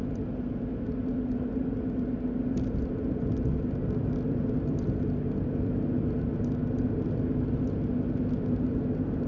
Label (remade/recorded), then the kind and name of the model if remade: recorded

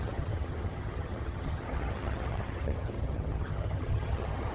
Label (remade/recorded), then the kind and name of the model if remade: remade, vocoder, HiFi-GAN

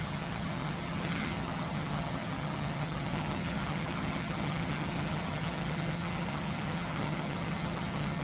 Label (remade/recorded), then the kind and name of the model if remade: remade, vocoder, HiFi-GAN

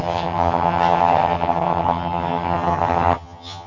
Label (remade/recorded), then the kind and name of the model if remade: remade, vocoder, HiFi-GAN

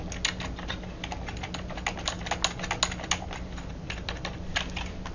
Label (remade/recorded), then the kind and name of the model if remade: recorded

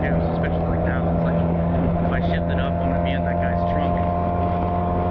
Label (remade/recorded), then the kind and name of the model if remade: recorded